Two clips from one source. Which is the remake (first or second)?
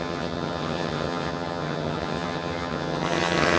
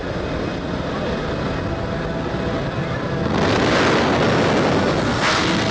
first